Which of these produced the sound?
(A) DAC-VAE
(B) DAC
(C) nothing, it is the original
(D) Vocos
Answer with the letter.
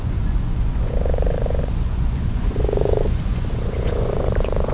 D